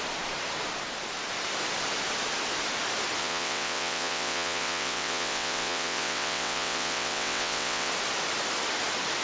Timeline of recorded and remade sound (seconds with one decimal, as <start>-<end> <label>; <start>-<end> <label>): 0.0-3.2 recorded; 3.2-7.9 remade; 7.9-9.2 recorded